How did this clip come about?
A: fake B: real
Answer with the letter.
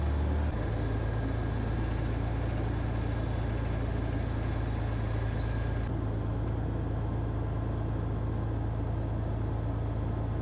B